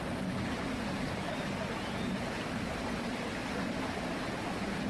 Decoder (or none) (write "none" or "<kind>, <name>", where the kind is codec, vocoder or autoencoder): none